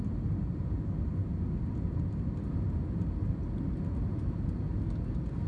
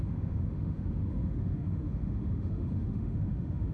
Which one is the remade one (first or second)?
second